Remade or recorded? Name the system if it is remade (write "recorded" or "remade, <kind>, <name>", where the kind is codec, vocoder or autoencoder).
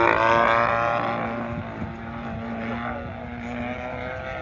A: recorded